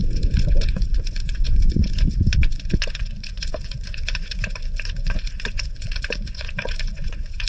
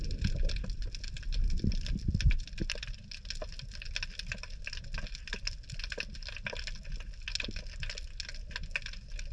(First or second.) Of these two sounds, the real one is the second